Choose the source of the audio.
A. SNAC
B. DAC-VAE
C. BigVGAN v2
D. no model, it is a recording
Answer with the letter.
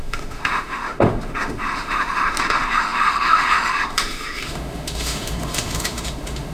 B